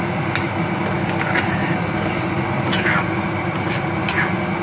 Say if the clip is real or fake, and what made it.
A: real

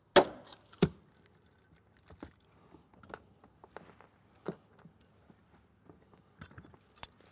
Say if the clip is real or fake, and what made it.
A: real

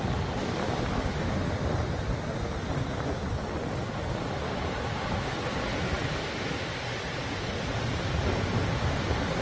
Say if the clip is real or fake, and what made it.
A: real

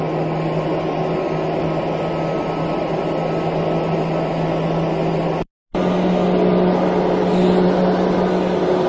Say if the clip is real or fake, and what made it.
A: real